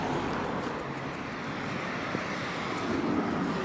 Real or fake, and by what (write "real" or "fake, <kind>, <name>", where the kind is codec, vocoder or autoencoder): real